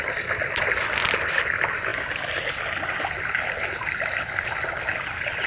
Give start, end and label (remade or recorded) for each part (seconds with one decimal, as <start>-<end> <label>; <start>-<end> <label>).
0.0-5.5 recorded